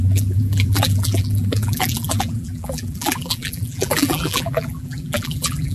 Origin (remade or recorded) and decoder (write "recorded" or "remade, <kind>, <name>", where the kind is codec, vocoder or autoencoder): remade, vocoder, BigVGAN v2